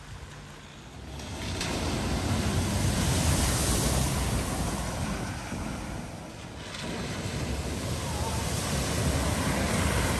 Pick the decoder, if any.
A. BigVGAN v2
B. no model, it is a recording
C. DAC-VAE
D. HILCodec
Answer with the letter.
B